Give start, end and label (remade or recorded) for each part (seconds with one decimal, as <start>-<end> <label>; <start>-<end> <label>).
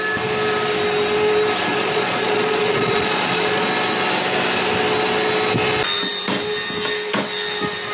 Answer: 0.0-1.8 recorded; 1.8-3.7 remade; 3.7-7.9 recorded